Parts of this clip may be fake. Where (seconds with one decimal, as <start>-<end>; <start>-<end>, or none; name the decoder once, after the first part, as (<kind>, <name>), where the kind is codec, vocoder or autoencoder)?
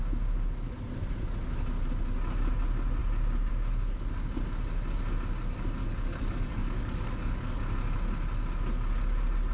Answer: 5.8-7.6 (codec, DAC)